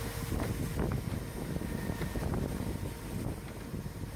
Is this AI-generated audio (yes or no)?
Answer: no